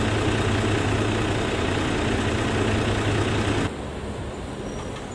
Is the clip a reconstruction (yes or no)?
no